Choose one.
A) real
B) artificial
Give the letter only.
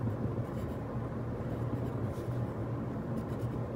B